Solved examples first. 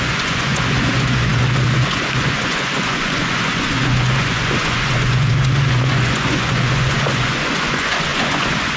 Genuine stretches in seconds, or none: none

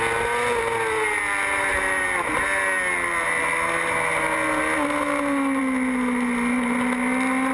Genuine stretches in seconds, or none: 0.0-7.5

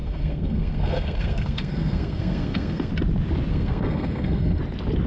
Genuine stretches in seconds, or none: 2.9-3.5; 4.6-5.1

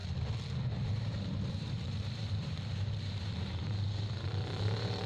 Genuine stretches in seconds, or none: 0.0-0.7

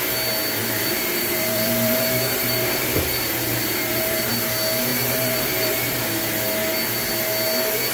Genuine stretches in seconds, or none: 0.0-0.6; 4.3-4.9; 6.0-7.9

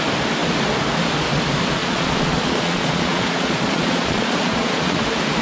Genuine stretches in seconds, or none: 0.0-1.8; 5.0-5.4